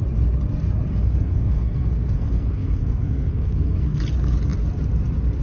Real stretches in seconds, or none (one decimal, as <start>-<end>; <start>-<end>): 0.0-0.9; 4.0-5.4